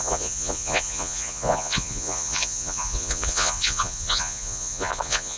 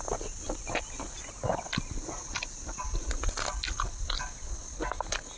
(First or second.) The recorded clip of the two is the second